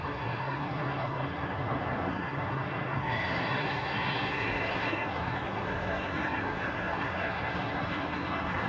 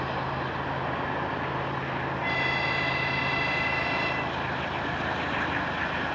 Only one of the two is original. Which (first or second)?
second